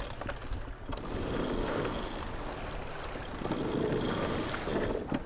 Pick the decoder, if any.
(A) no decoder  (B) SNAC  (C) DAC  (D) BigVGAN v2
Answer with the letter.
A